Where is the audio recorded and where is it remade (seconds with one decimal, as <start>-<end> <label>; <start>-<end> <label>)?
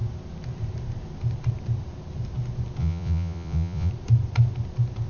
0.0-2.8 recorded; 2.8-3.9 remade; 3.9-5.1 recorded